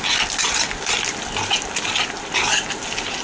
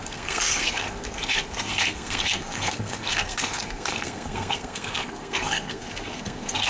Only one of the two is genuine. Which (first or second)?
first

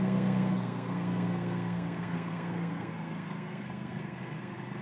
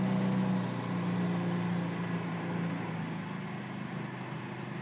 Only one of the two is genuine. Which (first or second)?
second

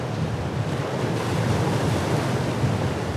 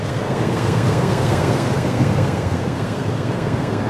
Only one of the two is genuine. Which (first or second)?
first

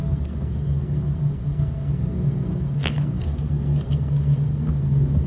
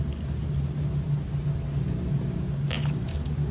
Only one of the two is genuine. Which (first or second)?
second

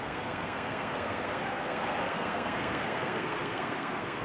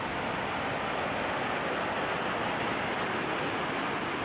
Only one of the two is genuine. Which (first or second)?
second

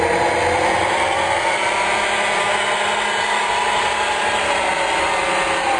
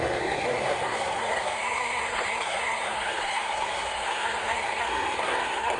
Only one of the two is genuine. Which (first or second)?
first